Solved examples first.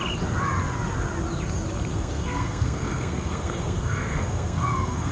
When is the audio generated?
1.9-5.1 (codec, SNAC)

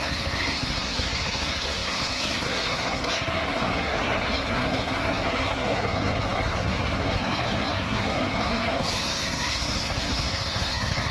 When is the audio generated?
0.0-11.1 (codec, SNAC)

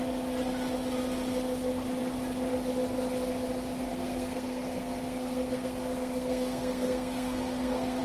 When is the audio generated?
3.9-8.0 (codec, SNAC)

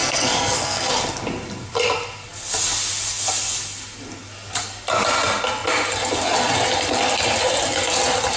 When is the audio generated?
0.0-0.9 (codec, SNAC)